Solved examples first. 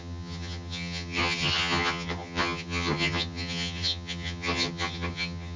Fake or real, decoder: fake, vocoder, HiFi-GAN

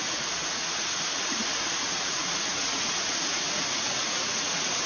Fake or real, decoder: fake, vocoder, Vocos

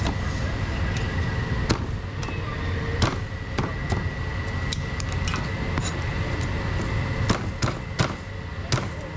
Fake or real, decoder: real